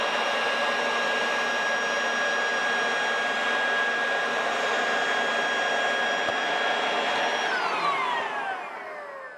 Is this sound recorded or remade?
recorded